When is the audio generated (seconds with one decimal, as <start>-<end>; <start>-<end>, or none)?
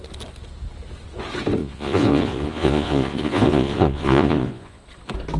1.6-4.8